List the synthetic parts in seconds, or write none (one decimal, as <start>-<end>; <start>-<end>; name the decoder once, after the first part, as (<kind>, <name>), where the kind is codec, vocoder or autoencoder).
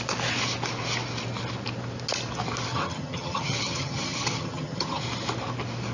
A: 2.7-5.0 (vocoder, HiFi-GAN)